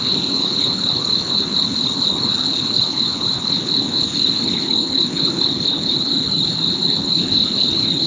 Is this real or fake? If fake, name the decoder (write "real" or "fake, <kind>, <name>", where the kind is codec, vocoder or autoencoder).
fake, codec, HILCodec